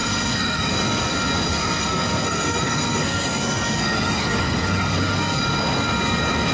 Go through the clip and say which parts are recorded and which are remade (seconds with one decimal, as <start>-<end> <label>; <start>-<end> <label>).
0.0-0.7 remade; 0.7-1.5 recorded; 1.5-5.4 remade; 5.4-6.5 recorded